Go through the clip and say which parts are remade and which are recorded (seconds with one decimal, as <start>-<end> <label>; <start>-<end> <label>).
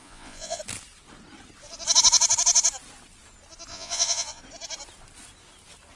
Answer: 0.0-0.6 remade; 0.6-3.7 recorded; 3.7-4.4 remade; 4.4-6.0 recorded